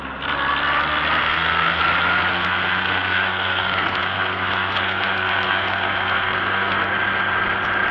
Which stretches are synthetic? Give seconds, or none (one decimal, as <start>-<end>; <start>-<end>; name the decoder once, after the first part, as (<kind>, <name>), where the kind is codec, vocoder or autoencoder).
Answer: 1.2-1.8 (codec, SNAC); 2.3-6.9